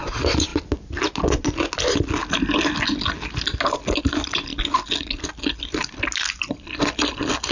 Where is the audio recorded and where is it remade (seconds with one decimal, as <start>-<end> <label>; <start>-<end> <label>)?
0.0-7.5 recorded